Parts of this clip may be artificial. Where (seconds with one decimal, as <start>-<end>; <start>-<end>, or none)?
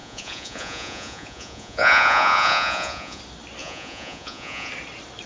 0.0-3.2; 3.6-4.7